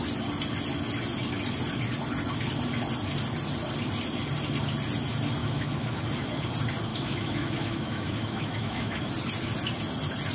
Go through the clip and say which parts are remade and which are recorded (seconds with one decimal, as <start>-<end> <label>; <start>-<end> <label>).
0.0-5.4 recorded; 5.4-6.0 remade; 6.0-6.9 recorded; 6.9-9.1 remade; 9.1-10.3 recorded